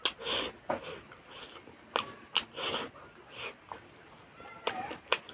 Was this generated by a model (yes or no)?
no